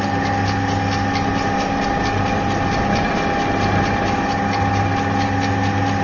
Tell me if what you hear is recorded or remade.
recorded